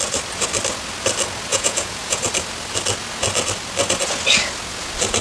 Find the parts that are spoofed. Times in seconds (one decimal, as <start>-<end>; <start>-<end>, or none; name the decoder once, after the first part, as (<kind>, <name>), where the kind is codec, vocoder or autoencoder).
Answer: 1.5-2.2 (vocoder, Vocos)